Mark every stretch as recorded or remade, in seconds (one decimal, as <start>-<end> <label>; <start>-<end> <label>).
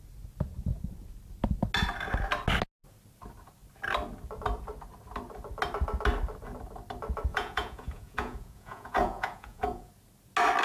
0.0-7.3 recorded; 7.3-9.9 remade; 9.9-10.6 recorded